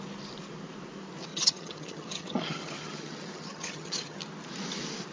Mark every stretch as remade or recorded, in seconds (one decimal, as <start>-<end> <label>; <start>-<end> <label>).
0.0-1.3 recorded; 1.3-4.2 remade; 4.2-5.1 recorded